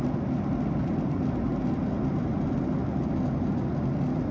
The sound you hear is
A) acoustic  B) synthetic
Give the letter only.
A